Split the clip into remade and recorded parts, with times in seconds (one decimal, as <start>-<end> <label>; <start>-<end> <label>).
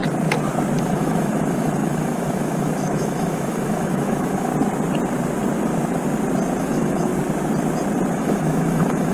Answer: 0.0-0.8 recorded; 0.8-4.5 remade; 4.5-6.6 recorded; 6.6-7.1 remade; 7.1-8.1 recorded; 8.1-9.1 remade